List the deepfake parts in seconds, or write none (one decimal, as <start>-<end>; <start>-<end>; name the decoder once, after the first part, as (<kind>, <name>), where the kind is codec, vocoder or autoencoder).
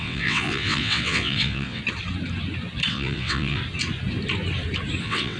0.0-1.8 (vocoder, WaveNeXt); 2.9-3.6; 5.0-5.4